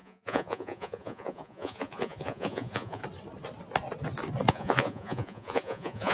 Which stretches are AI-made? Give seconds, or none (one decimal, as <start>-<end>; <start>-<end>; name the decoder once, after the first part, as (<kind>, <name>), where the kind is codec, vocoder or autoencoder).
0.0-3.0 (vocoder, Vocos); 4.5-6.1